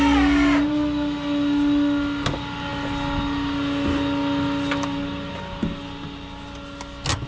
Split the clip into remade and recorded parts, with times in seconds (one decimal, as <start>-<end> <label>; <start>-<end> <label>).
0.0-7.3 recorded